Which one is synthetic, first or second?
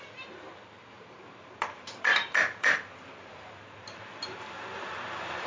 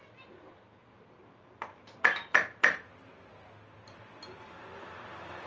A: first